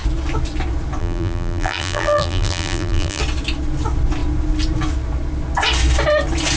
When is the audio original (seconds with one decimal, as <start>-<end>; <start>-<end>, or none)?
0.0-1.0; 3.2-6.6